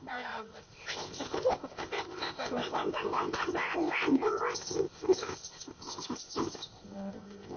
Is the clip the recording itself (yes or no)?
no